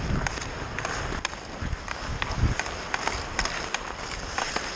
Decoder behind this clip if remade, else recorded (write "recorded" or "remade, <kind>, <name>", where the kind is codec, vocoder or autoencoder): recorded